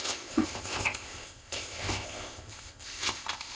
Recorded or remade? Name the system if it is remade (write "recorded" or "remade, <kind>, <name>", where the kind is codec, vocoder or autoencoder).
remade, codec, ZipCodec